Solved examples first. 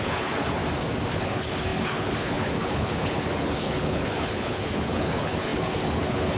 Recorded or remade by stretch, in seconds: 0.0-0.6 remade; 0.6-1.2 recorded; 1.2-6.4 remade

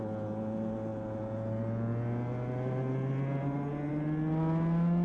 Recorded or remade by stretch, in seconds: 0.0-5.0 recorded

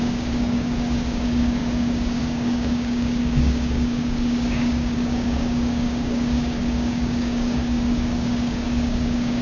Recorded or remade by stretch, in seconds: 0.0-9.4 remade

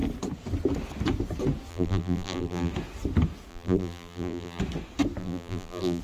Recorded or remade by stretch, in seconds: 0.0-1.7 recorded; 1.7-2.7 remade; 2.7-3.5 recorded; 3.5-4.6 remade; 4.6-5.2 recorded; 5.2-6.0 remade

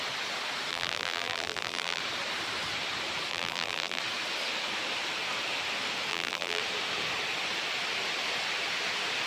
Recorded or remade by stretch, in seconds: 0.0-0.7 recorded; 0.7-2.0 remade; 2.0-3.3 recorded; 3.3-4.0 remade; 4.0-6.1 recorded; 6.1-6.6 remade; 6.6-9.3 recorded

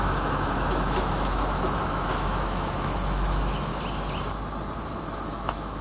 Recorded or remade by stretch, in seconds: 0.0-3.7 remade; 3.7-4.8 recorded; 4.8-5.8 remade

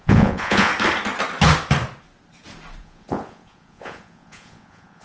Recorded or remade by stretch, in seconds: 0.0-0.7 remade; 0.7-2.8 recorded; 2.8-5.0 remade

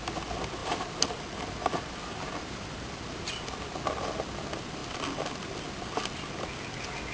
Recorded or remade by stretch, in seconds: 0.0-0.6 recorded; 0.6-3.3 remade; 3.3-7.1 recorded